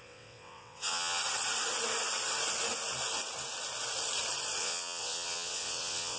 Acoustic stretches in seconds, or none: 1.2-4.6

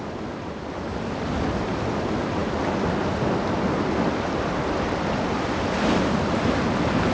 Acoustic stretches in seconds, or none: 0.0-7.1

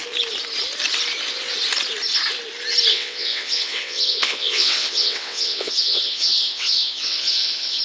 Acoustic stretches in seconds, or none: 0.0-2.9

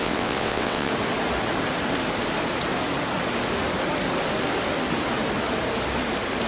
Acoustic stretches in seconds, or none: 0.9-6.5

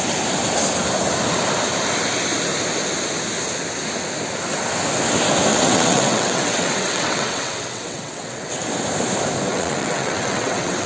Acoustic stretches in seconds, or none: 0.0-5.5; 8.6-9.5